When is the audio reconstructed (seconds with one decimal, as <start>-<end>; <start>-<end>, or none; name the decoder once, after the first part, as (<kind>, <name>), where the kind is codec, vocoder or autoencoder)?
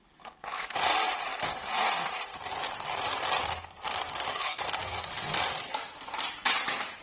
4.3-5.1 (codec, SNAC)